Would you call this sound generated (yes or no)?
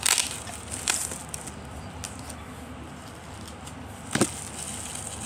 no